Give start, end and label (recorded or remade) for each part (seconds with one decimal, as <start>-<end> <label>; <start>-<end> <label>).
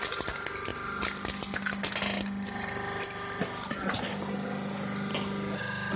0.0-6.0 recorded